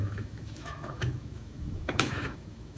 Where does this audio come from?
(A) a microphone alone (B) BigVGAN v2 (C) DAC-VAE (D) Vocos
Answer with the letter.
C